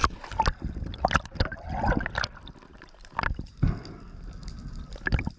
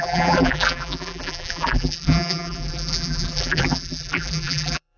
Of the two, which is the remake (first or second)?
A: second